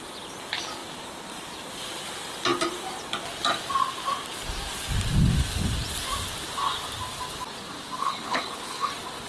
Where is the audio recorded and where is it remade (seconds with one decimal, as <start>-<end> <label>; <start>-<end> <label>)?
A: 0.0-8.0 recorded; 8.0-8.9 remade; 8.9-9.3 recorded